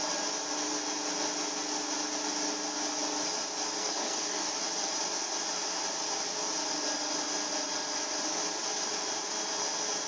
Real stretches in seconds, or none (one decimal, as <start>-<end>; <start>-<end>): 0.0-3.8; 4.5-10.1